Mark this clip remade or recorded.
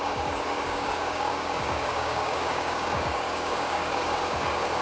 remade